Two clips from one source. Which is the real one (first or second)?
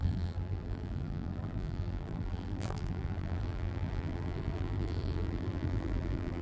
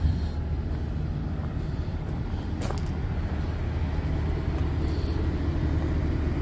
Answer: second